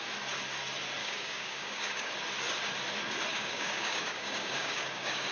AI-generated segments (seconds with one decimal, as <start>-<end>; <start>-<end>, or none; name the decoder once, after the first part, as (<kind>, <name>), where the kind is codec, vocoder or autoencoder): 1.0-2.1 (codec, DAC); 3.3-5.3